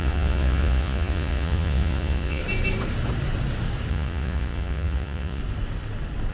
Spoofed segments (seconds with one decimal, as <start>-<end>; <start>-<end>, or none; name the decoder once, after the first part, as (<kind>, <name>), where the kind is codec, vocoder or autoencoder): 0.0-2.4 (vocoder, Vocos); 3.9-5.4